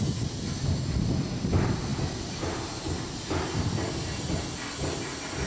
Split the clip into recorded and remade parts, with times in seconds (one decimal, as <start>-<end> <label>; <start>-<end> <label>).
0.0-5.5 recorded